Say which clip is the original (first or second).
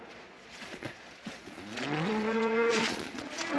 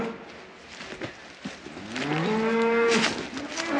second